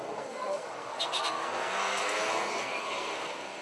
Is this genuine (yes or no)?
no